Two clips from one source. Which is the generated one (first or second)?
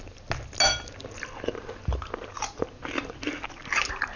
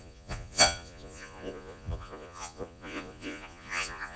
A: second